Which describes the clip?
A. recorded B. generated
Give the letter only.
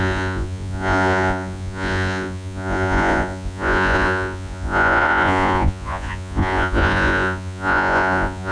B